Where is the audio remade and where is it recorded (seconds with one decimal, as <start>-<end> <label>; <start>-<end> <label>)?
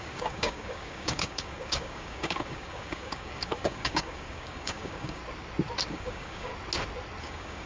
0.0-5.2 remade; 5.2-5.9 recorded; 5.9-6.5 remade; 6.5-7.2 recorded; 7.2-7.7 remade